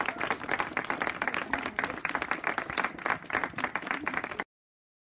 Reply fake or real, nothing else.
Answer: real